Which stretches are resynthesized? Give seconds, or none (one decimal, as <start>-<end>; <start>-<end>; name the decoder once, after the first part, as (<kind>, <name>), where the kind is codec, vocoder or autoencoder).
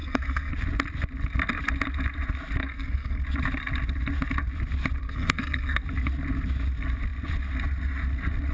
0.0-0.5 (codec, SNAC); 2.6-3.2; 5.0-5.8